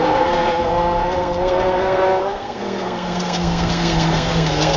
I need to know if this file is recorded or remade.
remade